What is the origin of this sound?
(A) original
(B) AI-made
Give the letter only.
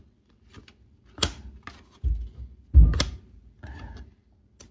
A